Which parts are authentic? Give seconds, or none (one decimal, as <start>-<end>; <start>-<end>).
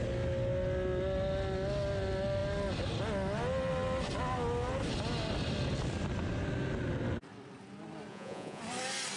0.0-8.1; 8.6-9.2